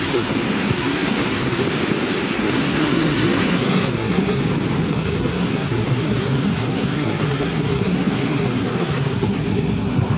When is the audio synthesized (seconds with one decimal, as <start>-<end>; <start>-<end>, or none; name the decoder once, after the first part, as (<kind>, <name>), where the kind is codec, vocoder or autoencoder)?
0.0-1.6 (codec, SNAC); 2.2-4.4; 4.9-10.2